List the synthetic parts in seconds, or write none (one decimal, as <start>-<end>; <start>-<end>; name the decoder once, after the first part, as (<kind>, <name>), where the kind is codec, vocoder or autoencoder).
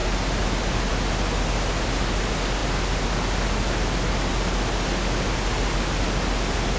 none